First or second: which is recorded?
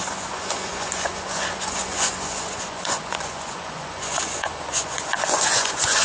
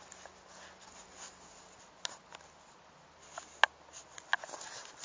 second